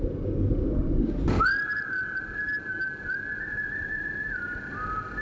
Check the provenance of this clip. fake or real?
real